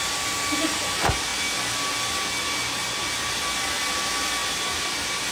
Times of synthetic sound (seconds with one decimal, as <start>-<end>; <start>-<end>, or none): none